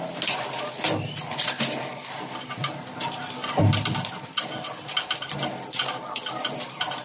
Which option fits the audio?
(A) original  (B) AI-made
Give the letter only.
A